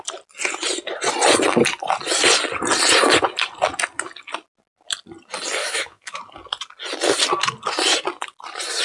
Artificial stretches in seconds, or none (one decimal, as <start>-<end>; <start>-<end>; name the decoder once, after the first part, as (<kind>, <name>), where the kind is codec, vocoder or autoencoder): 5.6-6.2 (autoencoder, DAC-VAE)